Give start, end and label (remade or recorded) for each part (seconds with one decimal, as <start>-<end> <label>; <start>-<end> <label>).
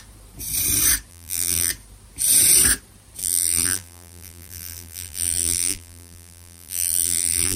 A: 0.0-1.1 recorded; 1.1-1.7 remade; 1.7-3.2 recorded; 3.2-7.6 remade